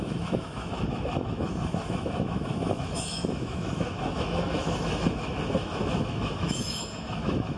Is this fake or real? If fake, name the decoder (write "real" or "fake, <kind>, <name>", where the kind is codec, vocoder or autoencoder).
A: fake, autoencoder, DAC-VAE